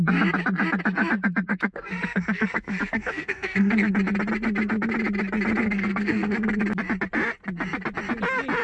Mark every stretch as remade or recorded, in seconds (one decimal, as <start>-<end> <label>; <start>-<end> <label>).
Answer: 0.0-1.5 recorded; 1.5-3.9 remade; 3.9-5.6 recorded; 5.6-6.6 remade; 6.6-8.6 recorded